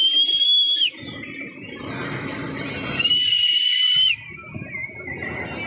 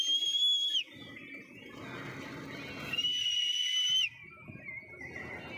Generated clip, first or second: first